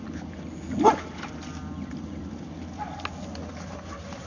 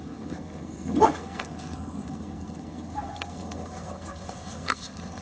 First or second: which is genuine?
first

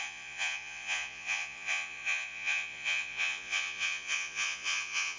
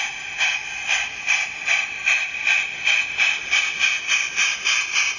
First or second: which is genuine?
second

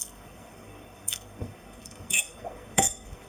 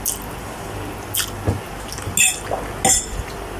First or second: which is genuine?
second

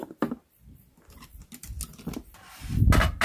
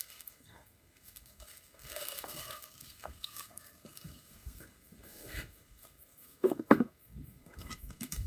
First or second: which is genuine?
first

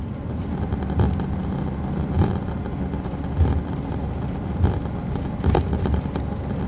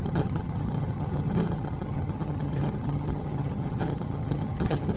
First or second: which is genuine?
first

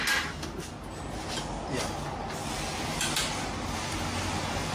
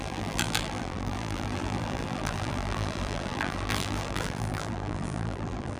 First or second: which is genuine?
first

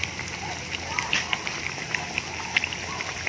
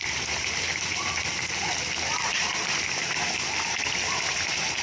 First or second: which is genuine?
first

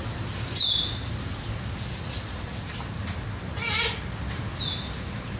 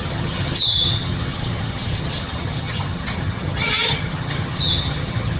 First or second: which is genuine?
first